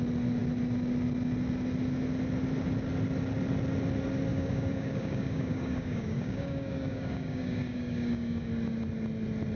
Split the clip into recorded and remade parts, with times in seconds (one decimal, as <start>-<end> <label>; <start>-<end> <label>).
0.0-4.3 recorded; 4.3-8.5 remade; 8.5-9.6 recorded